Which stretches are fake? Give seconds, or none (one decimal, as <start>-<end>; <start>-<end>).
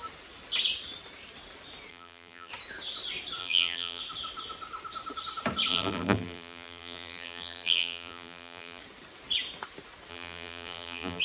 1.9-2.5; 3.4-4.0; 5.7-8.8; 10.1-11.2